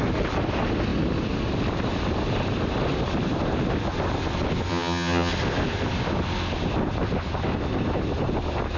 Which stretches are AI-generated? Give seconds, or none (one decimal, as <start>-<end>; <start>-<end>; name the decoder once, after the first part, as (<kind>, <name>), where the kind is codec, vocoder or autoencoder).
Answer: 4.7-5.3 (vocoder, HiFi-GAN)